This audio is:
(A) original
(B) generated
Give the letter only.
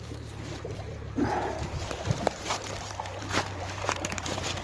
B